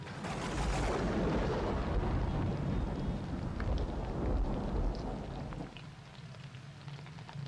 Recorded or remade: recorded